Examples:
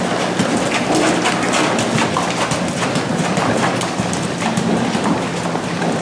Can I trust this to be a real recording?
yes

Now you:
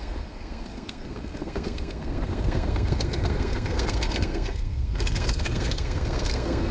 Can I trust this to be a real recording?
no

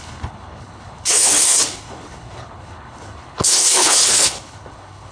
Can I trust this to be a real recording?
no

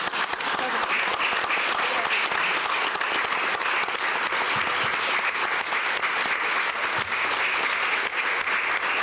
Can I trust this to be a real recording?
yes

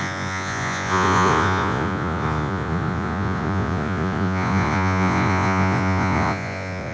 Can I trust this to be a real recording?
no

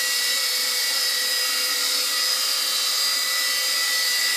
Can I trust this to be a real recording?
yes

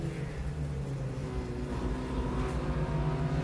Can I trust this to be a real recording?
yes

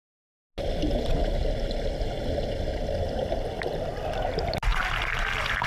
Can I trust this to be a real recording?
yes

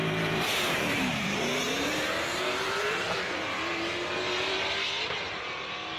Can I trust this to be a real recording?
no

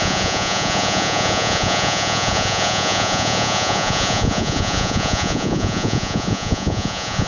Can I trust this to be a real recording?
no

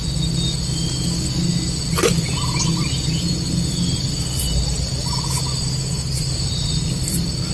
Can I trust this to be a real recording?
yes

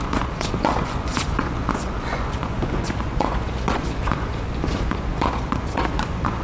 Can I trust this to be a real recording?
no